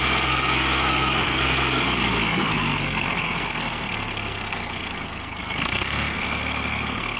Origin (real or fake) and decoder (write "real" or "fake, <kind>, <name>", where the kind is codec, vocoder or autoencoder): fake, codec, SNAC